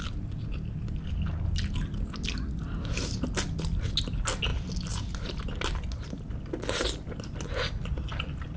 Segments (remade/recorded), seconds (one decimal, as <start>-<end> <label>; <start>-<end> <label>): 0.0-8.6 recorded